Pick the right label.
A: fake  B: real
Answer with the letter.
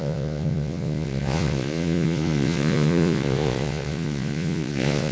A